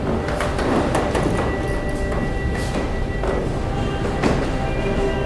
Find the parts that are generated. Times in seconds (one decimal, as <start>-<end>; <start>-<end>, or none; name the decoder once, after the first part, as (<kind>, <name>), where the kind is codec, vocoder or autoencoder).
none